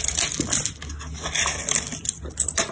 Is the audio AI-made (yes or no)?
no